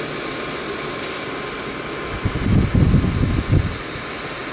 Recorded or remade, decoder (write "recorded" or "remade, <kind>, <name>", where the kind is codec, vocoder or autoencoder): recorded